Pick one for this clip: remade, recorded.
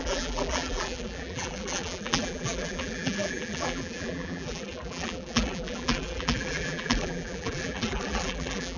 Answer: remade